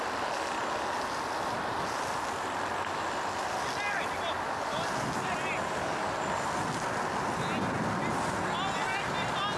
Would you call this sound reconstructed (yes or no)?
no